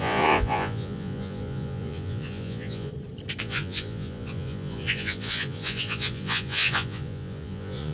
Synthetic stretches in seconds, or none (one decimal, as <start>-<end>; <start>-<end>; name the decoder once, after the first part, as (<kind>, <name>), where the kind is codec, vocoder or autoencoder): 0.0-2.9 (vocoder, Vocos); 3.4-7.9